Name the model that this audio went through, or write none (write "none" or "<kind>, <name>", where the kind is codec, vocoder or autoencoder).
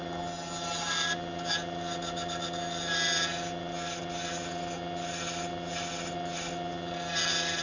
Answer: none